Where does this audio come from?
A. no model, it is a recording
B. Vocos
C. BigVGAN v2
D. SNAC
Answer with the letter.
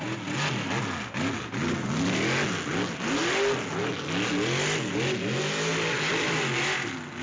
A